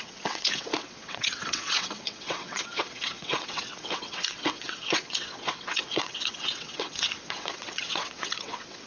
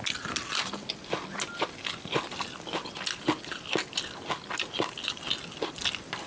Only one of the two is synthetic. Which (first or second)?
first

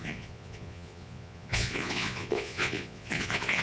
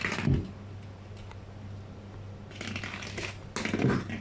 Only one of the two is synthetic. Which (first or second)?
first